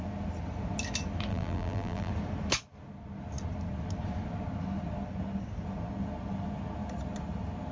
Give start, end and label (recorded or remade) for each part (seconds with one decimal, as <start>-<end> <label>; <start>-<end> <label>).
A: 0.0-1.3 recorded; 1.3-2.1 remade; 2.1-7.7 recorded